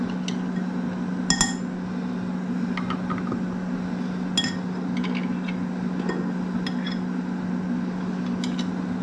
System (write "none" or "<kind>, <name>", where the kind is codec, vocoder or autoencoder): none